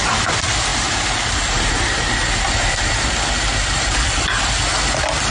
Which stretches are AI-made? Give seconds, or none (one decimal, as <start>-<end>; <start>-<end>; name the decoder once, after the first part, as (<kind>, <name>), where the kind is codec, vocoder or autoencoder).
none